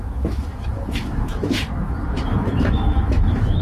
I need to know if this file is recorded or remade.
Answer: remade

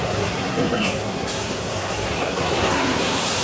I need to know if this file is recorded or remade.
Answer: remade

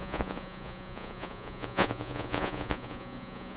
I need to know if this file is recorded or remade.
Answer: remade